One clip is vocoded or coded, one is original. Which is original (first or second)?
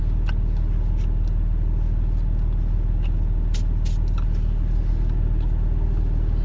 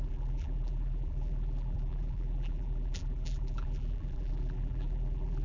first